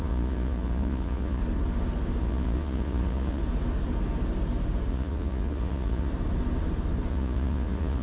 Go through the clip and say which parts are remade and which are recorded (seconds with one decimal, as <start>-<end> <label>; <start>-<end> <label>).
0.0-1.4 remade; 1.4-2.2 recorded; 2.2-3.4 remade; 3.4-4.9 recorded; 4.9-6.1 remade; 6.1-7.1 recorded; 7.1-8.0 remade